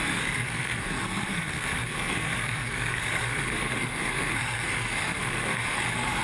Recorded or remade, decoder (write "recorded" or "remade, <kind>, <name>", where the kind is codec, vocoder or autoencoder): remade, codec, SNAC